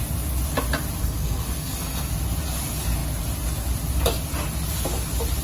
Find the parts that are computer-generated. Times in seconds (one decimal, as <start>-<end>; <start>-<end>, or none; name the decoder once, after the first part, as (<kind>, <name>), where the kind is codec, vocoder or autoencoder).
1.0-2.1 (codec, SNAC)